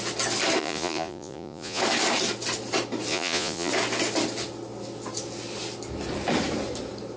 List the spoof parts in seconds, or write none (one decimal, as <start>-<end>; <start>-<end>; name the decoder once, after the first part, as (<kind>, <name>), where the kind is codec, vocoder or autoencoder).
0.6-1.8 (vocoder, Vocos); 3.1-3.7